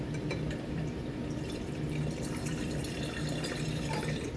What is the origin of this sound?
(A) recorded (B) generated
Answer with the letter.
B